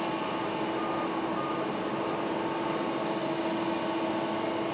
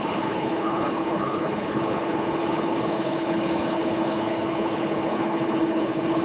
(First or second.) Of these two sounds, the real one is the first